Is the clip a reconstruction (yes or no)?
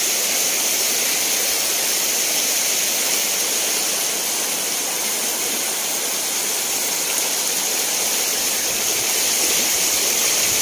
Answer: no